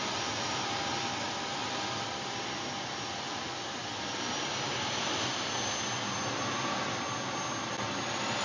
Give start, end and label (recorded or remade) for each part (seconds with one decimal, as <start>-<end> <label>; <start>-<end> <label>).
0.0-8.4 recorded